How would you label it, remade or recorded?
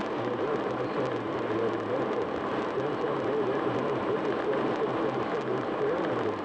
recorded